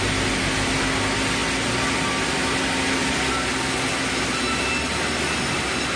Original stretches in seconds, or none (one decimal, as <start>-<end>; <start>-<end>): 0.0-6.0